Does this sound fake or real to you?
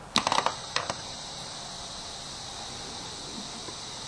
real